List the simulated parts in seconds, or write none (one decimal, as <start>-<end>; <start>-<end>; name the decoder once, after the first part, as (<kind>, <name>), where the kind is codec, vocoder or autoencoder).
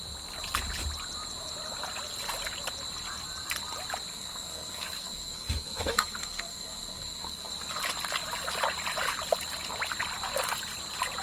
4.1-7.5 (codec, SNAC)